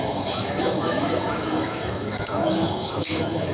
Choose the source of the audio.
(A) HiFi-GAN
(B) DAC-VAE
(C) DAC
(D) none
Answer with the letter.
B